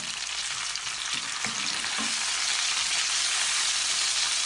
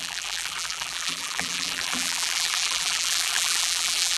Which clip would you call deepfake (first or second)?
second